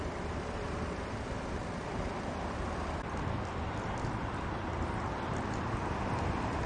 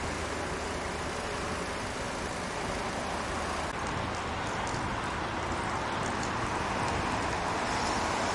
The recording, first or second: second